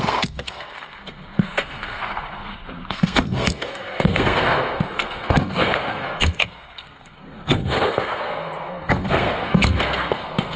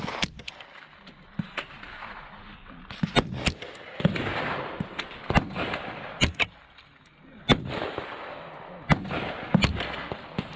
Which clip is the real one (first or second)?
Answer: second